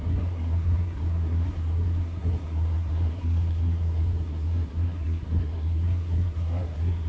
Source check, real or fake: fake